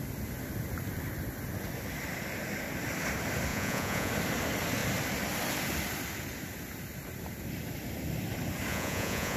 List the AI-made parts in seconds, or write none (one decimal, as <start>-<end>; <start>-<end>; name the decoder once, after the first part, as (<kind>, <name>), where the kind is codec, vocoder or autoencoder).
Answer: 3.5-4.1 (vocoder, Vocos); 8.7-9.4